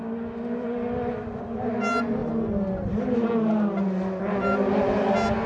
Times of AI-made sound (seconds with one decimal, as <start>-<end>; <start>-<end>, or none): none